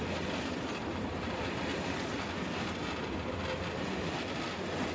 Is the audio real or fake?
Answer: real